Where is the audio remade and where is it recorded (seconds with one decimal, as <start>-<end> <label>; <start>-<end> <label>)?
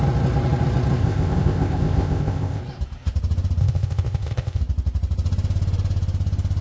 0.0-1.0 recorded; 1.0-2.6 remade; 2.6-3.6 recorded; 3.6-4.6 remade; 4.6-6.6 recorded